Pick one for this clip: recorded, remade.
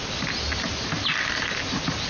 recorded